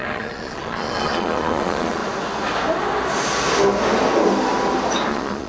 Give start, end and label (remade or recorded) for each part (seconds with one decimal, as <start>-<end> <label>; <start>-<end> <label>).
0.0-2.0 remade; 2.0-5.1 recorded; 5.1-5.5 remade